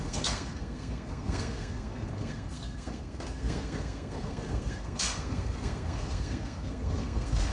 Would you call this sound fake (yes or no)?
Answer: yes